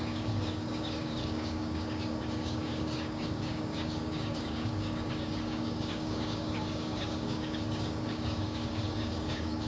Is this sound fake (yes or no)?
yes